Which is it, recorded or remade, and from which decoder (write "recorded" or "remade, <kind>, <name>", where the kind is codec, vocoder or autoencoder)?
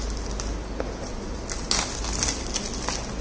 recorded